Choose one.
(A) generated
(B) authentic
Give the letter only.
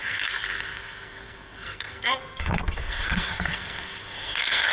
A